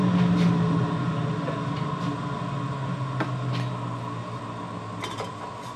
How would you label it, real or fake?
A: real